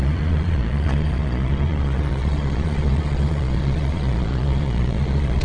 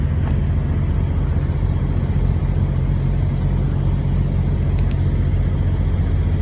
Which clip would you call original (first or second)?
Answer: second